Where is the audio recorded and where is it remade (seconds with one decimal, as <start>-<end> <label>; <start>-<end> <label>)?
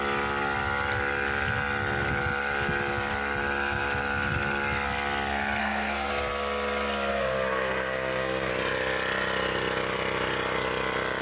0.0-5.6 recorded; 5.6-6.1 remade; 6.1-7.1 recorded; 7.1-8.5 remade; 8.5-11.2 recorded